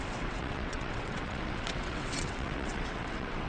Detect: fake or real fake